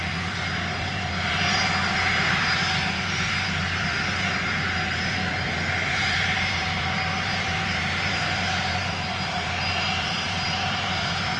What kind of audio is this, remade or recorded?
remade